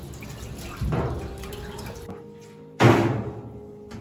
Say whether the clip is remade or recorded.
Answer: recorded